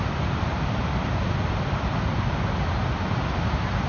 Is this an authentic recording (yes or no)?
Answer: yes